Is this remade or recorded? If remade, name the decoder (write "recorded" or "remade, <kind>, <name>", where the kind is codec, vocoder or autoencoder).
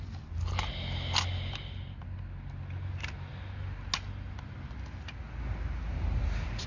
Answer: recorded